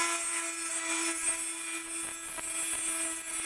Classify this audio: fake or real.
real